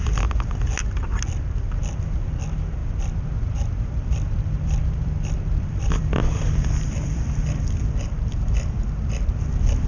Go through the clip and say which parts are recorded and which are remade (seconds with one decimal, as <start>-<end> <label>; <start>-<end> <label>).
0.0-2.8 recorded; 2.8-7.7 remade; 7.7-9.9 recorded